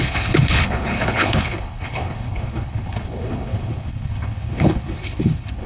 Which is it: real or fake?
fake